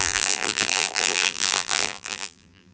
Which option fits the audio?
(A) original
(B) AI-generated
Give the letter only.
B